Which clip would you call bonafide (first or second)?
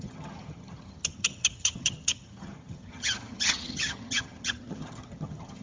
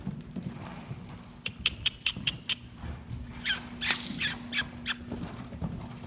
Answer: second